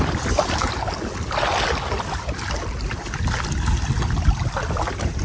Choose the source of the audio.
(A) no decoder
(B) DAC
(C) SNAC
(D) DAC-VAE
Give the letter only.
A